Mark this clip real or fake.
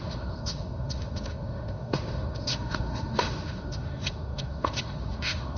fake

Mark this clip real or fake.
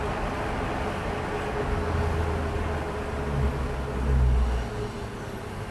real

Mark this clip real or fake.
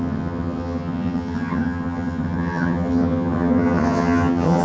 fake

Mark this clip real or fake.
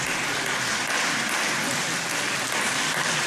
real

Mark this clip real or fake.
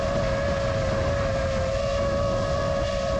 real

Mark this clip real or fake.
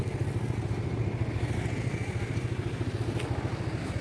real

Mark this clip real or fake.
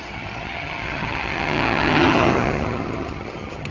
fake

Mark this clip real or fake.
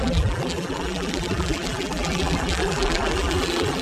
fake